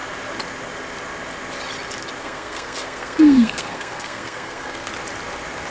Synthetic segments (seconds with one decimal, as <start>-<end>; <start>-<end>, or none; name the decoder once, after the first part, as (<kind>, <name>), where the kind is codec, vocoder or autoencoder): 2.2-4.9 (codec, SNAC)